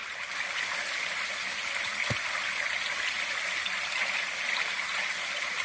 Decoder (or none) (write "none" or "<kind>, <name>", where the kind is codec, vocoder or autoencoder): none